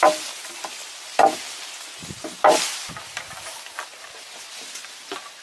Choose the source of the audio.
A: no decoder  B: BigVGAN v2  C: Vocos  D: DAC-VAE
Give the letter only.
A